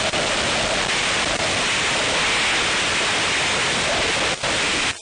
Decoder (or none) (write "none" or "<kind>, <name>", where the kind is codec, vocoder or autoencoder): none